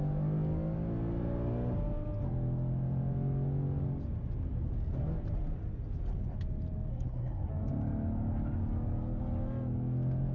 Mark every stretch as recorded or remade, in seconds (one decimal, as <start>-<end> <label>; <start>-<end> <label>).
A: 0.0-6.9 recorded; 6.9-7.5 remade; 7.5-10.3 recorded